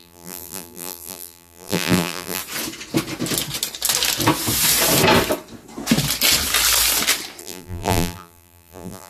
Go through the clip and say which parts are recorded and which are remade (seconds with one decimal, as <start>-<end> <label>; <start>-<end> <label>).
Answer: 0.0-2.4 remade; 2.4-7.4 recorded; 7.4-9.1 remade